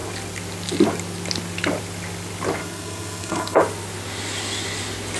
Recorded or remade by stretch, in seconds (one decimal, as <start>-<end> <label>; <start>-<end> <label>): 0.0-2.6 recorded; 2.6-3.6 remade; 3.6-5.2 recorded